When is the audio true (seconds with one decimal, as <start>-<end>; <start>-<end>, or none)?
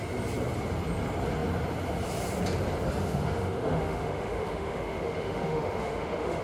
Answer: 0.0-3.0